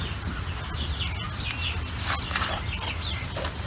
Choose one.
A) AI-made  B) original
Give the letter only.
B